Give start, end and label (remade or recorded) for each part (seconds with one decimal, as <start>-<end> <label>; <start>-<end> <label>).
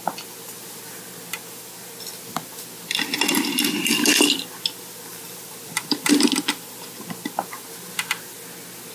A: 0.0-5.1 recorded; 5.1-6.1 remade; 6.1-8.9 recorded